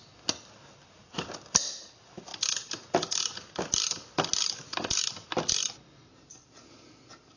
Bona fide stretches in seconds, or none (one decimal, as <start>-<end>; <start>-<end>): 0.0-7.4